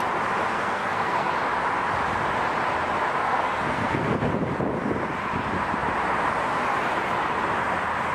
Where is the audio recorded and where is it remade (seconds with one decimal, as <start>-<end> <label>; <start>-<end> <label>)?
0.0-0.5 recorded; 0.5-1.3 remade; 1.3-3.2 recorded; 3.2-4.3 remade; 4.3-8.1 recorded